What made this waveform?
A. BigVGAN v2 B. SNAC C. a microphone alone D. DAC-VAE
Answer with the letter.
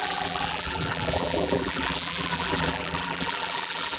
A